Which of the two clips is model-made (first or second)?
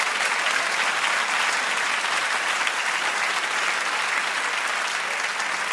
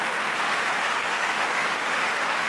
second